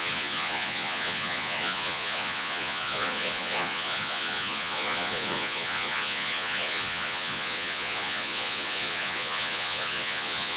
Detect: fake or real fake